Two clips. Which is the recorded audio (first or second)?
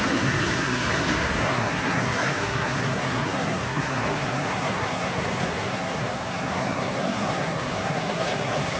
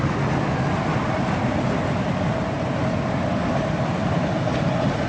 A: second